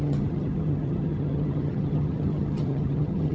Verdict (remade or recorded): remade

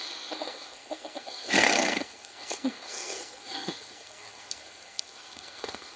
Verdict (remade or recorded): remade